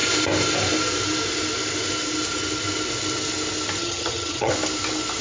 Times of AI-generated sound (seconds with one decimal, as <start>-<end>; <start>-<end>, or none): 3.8-4.5